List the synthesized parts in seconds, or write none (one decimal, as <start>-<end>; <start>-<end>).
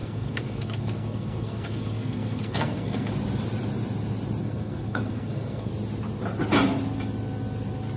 0.0-3.1; 4.4-5.7